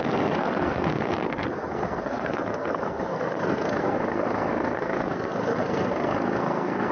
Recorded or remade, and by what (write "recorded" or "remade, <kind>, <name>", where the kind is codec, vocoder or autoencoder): remade, codec, SNAC